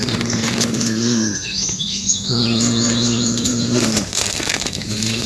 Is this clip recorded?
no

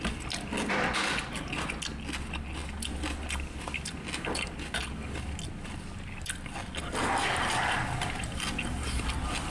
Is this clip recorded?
yes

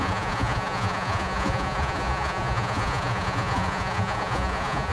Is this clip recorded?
no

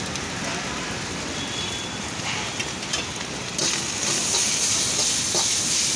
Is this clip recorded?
yes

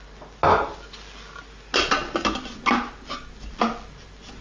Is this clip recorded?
yes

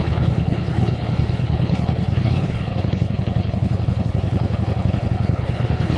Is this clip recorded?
no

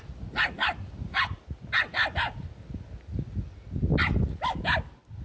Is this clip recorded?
yes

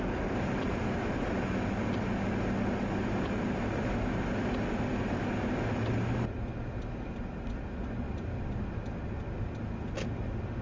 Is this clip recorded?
yes